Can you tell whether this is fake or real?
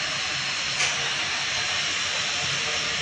real